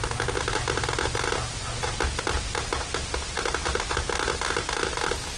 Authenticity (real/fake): real